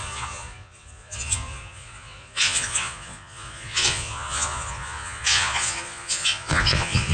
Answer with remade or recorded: remade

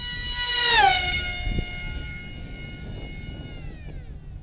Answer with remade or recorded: recorded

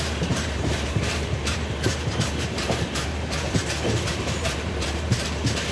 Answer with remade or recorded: remade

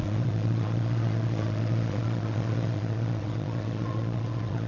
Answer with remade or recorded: remade